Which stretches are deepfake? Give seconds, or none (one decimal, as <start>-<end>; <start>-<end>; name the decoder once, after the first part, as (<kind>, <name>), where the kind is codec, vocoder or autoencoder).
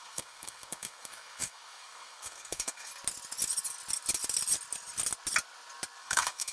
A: 0.0-2.9 (codec, SNAC); 6.0-6.5